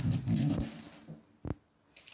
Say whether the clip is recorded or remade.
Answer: recorded